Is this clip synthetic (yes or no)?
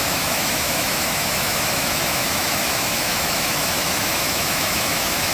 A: yes